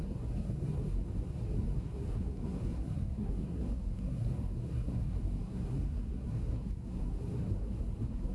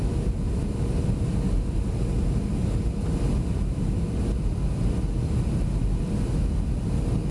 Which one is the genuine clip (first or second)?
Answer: second